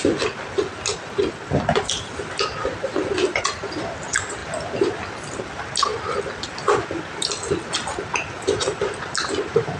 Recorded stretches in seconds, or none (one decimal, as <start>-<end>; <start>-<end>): 0.0-9.8